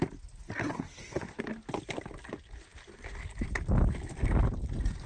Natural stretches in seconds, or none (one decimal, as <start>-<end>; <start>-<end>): 0.0-0.6; 1.4-5.1